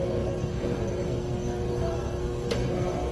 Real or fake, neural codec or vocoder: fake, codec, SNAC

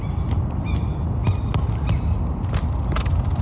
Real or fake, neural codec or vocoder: real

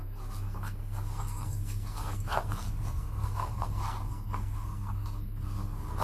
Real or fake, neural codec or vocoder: fake, codec, SNAC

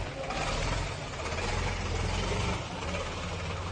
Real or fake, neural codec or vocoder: real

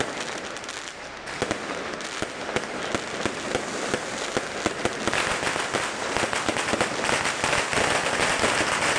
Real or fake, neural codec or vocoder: real